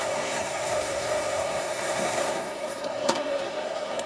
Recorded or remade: remade